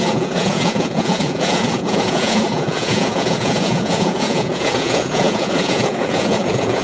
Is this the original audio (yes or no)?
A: no